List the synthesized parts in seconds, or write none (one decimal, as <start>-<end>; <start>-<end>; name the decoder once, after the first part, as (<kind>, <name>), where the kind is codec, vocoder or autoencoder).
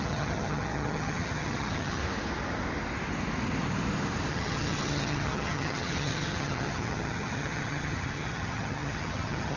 0.0-2.0 (vocoder, HiFi-GAN); 4.3-9.6